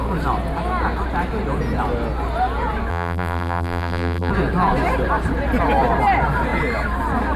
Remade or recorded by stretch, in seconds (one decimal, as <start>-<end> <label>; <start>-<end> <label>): 0.0-2.9 recorded; 2.9-4.3 remade; 4.3-7.4 recorded